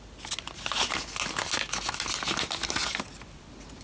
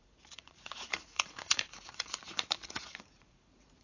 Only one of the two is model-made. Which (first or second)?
second